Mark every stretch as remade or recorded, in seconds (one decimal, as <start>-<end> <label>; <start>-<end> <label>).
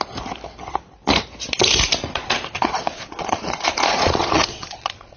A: 0.0-2.0 recorded; 2.0-5.2 remade